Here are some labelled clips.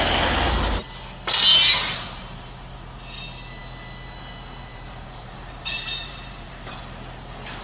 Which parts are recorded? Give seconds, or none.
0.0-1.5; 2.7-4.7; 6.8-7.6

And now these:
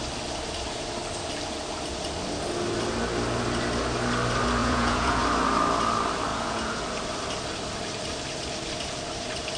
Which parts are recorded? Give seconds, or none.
0.0-4.6; 5.2-6.3; 6.8-9.6